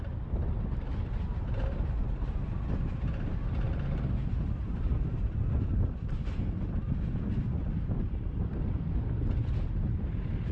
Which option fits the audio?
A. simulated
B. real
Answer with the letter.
B